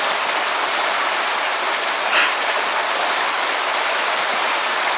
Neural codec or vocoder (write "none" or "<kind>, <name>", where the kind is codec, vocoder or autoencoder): none